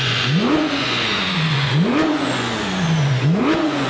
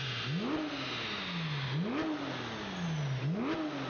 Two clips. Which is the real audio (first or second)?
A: second